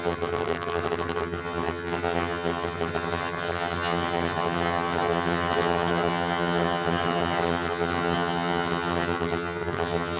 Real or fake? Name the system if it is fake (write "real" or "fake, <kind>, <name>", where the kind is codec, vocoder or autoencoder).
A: fake, vocoder, HiFi-GAN